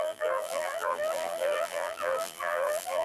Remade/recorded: remade